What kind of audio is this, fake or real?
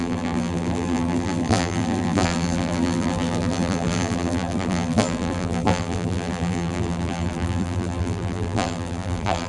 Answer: fake